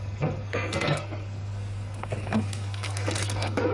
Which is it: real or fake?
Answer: fake